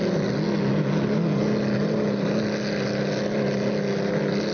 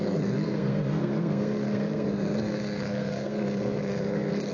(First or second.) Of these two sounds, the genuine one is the first